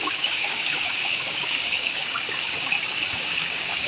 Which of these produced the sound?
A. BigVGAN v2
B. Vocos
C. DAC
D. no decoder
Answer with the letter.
C